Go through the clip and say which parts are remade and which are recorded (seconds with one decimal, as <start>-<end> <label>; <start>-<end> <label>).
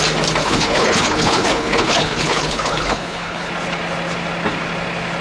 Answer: 0.0-0.4 recorded; 0.4-3.5 remade; 3.5-5.2 recorded